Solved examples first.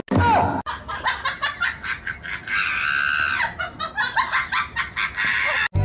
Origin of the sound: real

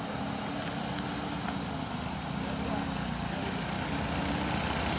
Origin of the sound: real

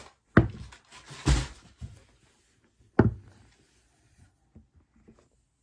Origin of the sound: real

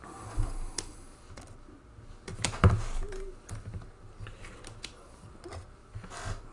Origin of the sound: real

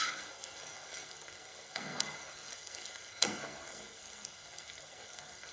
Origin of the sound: fake